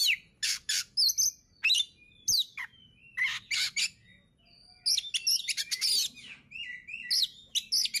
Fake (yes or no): no